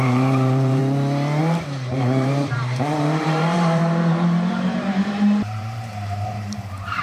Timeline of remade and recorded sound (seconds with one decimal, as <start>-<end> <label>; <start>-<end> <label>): 0.0-0.8 remade; 0.8-1.4 recorded; 1.4-7.0 remade